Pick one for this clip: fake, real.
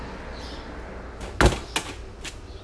real